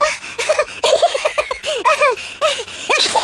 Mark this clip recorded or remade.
remade